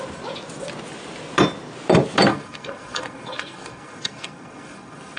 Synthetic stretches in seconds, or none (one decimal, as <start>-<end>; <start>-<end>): 2.3-5.2